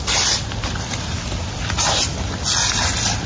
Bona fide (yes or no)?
yes